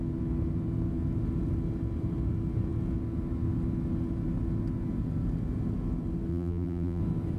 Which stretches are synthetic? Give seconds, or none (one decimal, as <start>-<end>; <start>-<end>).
6.3-7.0